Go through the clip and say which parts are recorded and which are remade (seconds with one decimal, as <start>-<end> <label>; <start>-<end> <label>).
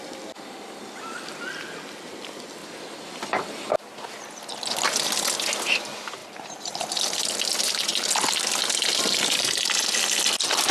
0.0-6.2 recorded; 6.2-7.4 remade; 7.4-10.7 recorded